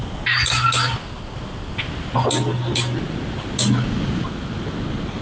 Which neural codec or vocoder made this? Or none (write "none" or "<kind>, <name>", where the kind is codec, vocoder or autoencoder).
none